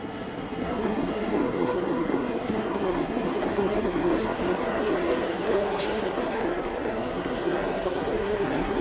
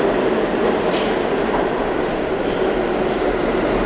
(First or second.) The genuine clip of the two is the second